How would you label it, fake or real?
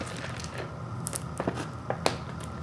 real